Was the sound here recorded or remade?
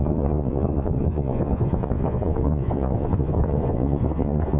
remade